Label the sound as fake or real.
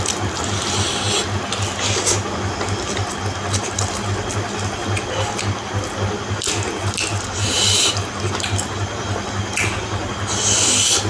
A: real